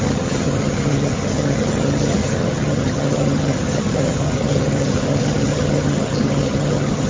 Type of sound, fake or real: fake